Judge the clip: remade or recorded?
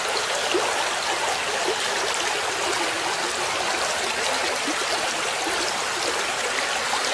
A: recorded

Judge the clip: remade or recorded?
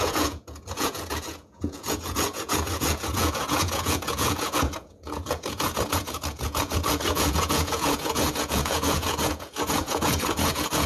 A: remade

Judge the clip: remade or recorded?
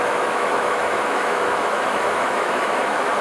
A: remade